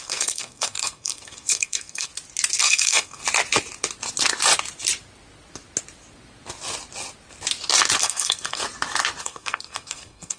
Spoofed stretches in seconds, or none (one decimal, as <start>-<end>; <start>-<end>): 0.0-2.1; 2.6-3.2; 8.0-8.6; 9.2-10.4